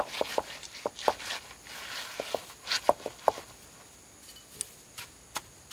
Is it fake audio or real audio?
real